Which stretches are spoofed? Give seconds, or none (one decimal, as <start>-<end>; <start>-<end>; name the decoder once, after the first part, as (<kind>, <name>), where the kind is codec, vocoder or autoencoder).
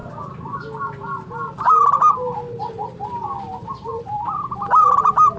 1.5-5.4 (vocoder, BigVGAN v2)